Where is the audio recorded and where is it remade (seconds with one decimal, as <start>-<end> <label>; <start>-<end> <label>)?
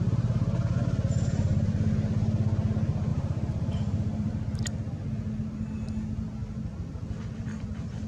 0.0-3.1 recorded; 3.1-4.3 remade; 4.3-8.1 recorded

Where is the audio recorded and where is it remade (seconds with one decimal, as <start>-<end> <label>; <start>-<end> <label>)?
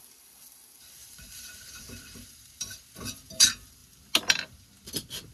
0.0-1.0 recorded; 1.0-3.2 remade; 3.2-5.3 recorded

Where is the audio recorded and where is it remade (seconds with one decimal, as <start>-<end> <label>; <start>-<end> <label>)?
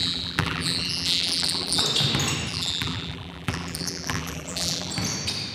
0.0-1.8 remade; 1.8-2.5 recorded; 2.5-4.9 remade; 4.9-5.5 recorded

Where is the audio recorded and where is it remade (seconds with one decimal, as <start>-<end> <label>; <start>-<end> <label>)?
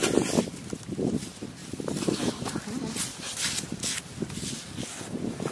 0.0-1.6 recorded; 1.6-2.2 remade; 2.2-3.1 recorded; 3.1-3.7 remade; 3.7-5.5 recorded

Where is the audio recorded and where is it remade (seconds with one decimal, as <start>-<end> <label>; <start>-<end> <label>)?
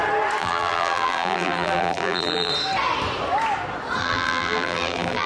0.0-0.4 recorded; 0.4-2.5 remade; 2.5-4.0 recorded; 4.0-5.3 remade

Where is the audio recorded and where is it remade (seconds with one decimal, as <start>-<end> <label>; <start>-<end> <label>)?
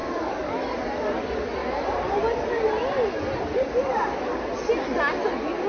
0.0-1.6 recorded; 1.6-2.2 remade; 2.2-5.7 recorded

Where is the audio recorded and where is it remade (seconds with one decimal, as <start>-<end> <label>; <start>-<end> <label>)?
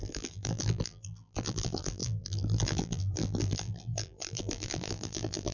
0.0-5.5 remade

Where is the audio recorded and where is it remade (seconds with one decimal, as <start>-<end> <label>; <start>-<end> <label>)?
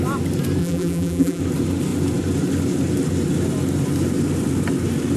0.0-0.6 recorded; 0.6-1.4 remade; 1.4-5.2 recorded